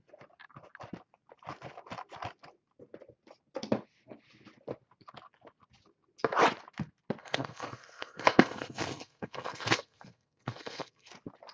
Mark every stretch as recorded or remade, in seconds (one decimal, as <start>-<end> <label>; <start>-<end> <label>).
0.0-7.2 recorded; 7.2-11.1 remade; 11.1-11.5 recorded